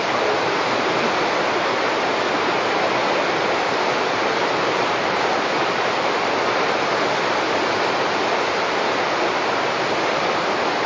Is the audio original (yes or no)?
yes